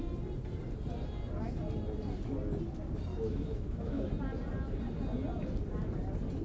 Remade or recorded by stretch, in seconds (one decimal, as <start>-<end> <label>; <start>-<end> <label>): 0.0-3.1 recorded; 3.1-4.1 remade; 4.1-6.4 recorded